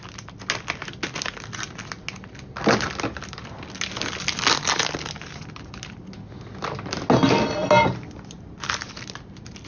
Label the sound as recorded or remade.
recorded